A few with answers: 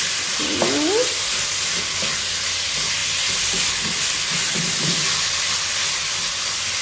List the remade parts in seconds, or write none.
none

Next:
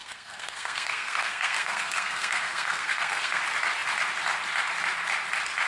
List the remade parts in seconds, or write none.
0.0-3.4 (codec, SNAC)

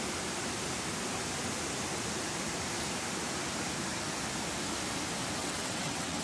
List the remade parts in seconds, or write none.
5.4-6.2 (vocoder, WaveNeXt)

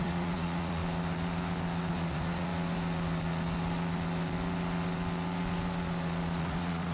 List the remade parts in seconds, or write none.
0.0-0.8 (vocoder, Vocos); 1.9-2.5; 6.4-6.9